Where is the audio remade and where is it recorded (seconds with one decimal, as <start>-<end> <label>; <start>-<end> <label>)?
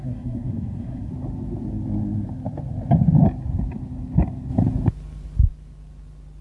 0.0-1.1 remade; 1.1-6.4 recorded